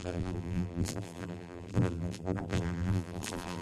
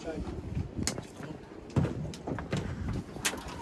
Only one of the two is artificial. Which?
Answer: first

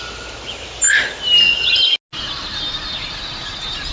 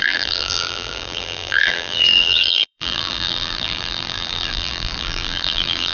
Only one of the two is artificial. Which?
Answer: second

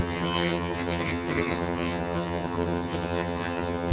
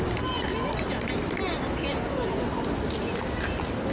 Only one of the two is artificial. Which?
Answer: first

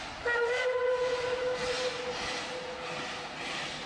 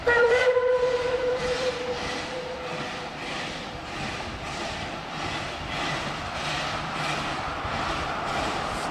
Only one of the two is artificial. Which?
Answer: second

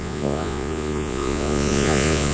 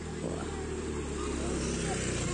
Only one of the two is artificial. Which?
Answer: first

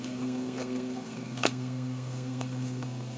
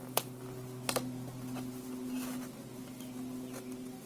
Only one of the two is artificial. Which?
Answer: first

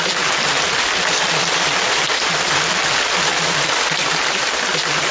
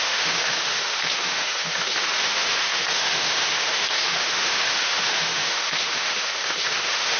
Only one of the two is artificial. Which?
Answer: second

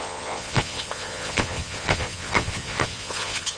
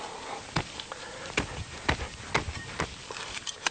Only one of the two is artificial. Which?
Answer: first